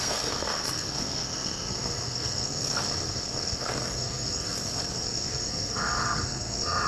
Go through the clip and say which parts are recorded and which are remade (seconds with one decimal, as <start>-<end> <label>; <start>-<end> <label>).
0.0-6.9 remade